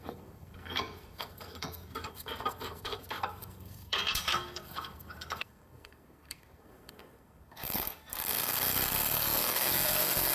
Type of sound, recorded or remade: remade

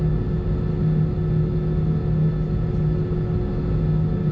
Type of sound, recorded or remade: recorded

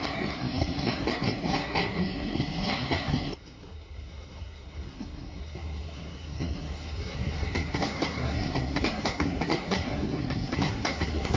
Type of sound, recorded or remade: remade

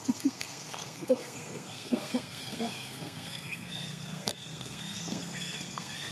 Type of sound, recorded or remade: remade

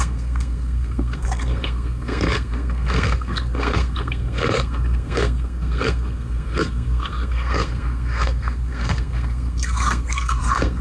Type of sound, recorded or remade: remade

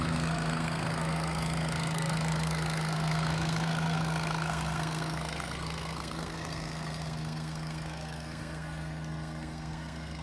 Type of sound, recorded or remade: remade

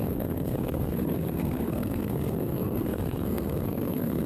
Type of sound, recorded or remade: remade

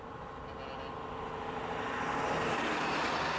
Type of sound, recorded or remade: recorded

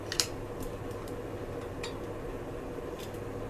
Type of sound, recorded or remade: recorded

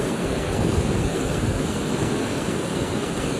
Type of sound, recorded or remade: remade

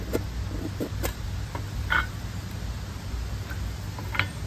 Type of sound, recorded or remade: recorded